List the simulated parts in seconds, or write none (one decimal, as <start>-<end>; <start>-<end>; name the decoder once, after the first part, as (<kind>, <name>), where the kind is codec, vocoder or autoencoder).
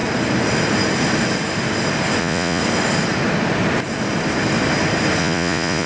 2.2-2.6 (vocoder, Vocos); 5.2-5.9